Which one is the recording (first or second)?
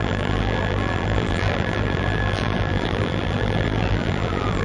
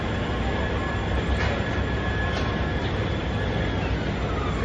second